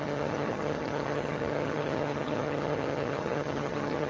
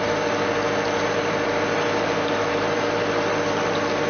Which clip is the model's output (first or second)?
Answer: first